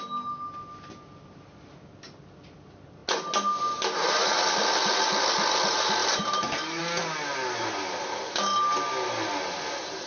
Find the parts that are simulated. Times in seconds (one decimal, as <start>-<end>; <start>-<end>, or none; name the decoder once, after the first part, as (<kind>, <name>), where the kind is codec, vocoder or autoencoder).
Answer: 6.0-6.8 (vocoder, BigVGAN v2)